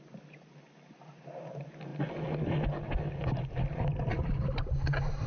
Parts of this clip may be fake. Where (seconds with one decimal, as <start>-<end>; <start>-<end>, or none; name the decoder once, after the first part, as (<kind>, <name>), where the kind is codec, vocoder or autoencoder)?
none

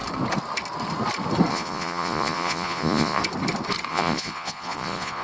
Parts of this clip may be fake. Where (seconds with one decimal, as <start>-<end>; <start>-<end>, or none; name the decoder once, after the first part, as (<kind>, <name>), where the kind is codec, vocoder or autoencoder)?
1.5-3.2 (vocoder, Vocos); 3.9-5.2

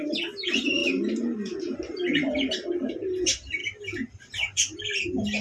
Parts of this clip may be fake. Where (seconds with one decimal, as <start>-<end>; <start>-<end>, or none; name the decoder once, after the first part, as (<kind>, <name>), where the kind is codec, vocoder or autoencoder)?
none

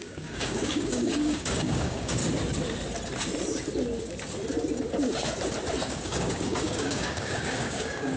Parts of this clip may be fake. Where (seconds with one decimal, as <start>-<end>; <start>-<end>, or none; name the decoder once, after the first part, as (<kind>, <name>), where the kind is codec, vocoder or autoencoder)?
0.0-2.2 (codec, DAC); 5.9-8.2

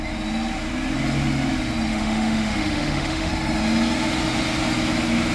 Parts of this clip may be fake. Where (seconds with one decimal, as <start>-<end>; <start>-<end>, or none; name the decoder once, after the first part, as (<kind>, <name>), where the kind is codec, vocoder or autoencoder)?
1.9-3.3 (autoencoder, DAC-VAE)

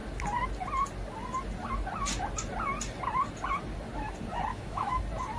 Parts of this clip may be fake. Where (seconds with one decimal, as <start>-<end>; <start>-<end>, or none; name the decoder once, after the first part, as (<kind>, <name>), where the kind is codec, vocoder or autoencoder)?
4.5-5.0 (autoencoder, DAC-VAE)

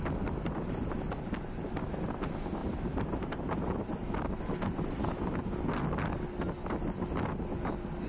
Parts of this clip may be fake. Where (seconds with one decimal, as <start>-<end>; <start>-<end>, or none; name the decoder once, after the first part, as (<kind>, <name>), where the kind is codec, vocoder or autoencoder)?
2.6-4.4 (vocoder, BigVGAN v2)

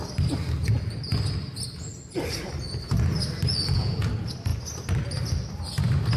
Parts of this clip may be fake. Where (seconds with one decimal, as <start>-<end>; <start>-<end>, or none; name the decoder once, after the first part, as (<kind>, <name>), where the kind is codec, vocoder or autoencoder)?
3.5-4.1 (vocoder, Vocos)